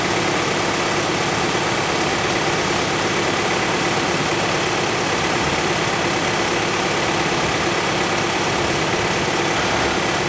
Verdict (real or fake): real